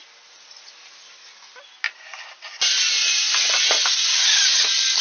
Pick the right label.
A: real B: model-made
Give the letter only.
A